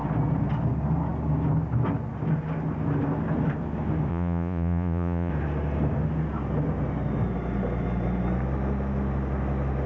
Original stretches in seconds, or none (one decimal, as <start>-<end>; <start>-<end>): 0.0-4.1; 5.3-9.9